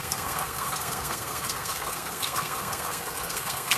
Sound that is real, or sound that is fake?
fake